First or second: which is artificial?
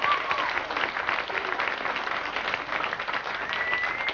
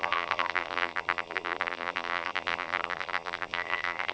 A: second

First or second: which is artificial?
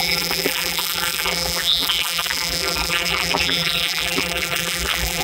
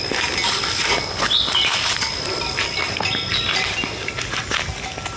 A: first